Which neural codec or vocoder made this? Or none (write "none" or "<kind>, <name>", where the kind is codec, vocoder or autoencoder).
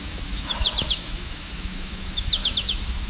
autoencoder, DAC-VAE